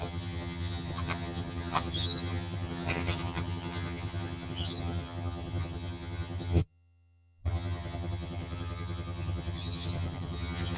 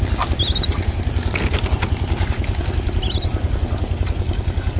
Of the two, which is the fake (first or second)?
first